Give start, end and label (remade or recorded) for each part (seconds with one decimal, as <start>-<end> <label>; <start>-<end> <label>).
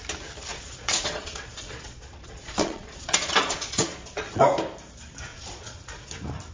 0.0-0.5 recorded; 0.5-4.4 remade; 4.4-5.3 recorded; 5.3-6.1 remade; 6.1-6.5 recorded